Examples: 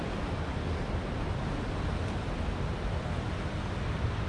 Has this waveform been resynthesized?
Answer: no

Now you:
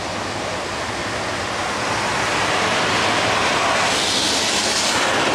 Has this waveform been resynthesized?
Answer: no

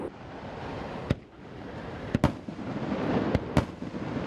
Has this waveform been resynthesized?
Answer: no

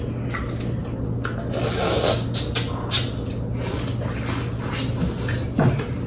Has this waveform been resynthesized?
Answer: no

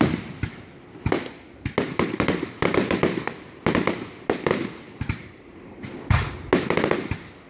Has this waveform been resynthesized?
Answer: no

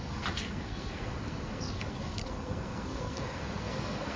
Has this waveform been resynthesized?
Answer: yes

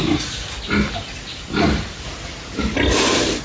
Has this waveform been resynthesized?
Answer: no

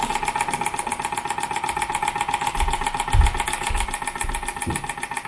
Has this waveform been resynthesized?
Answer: no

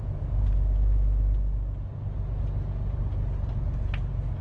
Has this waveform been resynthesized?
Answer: no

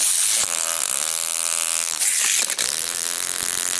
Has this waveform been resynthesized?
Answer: no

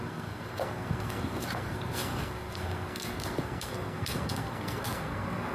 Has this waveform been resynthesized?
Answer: yes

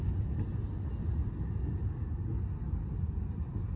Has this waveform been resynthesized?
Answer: no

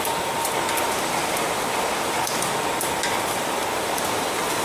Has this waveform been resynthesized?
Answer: no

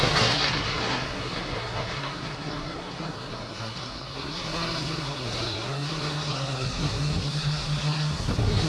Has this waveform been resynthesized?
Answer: yes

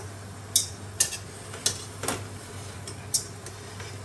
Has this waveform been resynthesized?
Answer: no